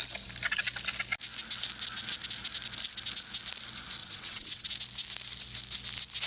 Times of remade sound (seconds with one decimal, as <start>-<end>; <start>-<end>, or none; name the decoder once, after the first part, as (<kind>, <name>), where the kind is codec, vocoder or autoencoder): 4.0-4.7 (vocoder, WaveNeXt)